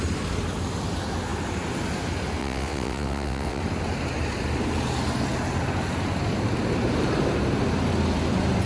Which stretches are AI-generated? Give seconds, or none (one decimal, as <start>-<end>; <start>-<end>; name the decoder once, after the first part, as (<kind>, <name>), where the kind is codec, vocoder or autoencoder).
2.4-3.6 (vocoder, WaveNeXt)